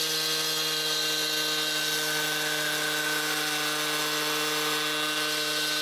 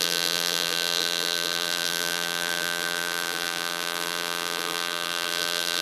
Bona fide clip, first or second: first